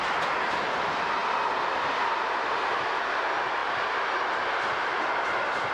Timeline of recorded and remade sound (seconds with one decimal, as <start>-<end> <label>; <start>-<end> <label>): 0.0-5.7 recorded